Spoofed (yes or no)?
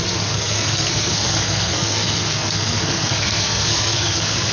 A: yes